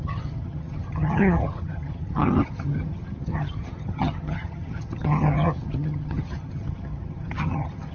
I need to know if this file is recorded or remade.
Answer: remade